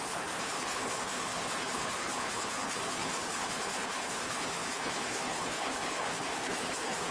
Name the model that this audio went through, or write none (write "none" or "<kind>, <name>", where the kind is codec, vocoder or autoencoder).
codec, HILCodec